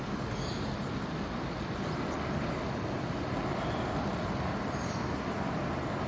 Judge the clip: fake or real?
real